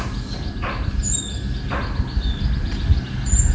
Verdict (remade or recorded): recorded